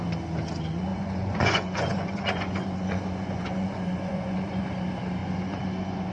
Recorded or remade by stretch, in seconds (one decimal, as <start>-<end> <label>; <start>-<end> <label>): 0.0-0.9 recorded; 0.9-4.6 remade; 4.6-5.2 recorded; 5.2-6.1 remade